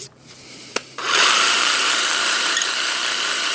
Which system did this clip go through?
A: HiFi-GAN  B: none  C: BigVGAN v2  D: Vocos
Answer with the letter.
C